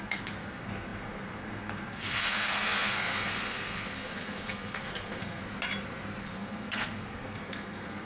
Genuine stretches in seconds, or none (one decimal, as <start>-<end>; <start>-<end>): 5.4-6.2